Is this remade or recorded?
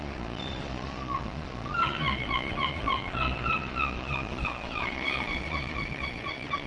remade